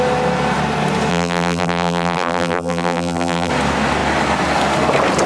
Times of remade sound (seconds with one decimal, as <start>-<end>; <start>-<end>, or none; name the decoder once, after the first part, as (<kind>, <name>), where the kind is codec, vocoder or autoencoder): 1.1-3.5 (vocoder, BigVGAN v2)